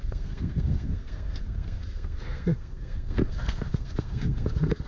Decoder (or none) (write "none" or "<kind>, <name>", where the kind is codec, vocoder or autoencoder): codec, SNAC